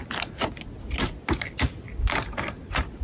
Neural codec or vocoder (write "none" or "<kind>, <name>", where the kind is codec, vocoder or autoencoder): none